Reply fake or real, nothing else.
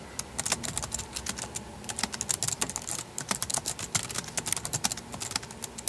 real